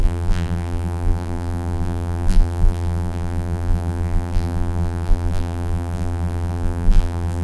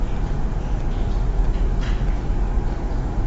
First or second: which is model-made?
first